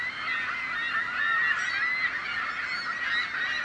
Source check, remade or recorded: recorded